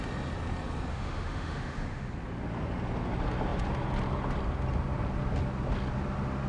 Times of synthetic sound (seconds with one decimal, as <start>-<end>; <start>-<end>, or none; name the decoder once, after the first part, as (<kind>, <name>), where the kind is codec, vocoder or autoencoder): 0.9-2.1 (autoencoder, DAC-VAE)